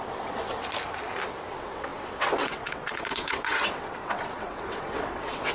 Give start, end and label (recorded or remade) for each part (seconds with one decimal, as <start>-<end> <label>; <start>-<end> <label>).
0.0-0.6 remade; 0.6-1.5 recorded; 1.5-5.5 remade